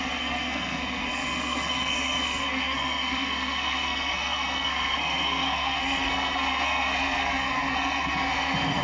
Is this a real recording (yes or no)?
no